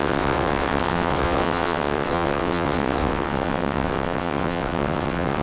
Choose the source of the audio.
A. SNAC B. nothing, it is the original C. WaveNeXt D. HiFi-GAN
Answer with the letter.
C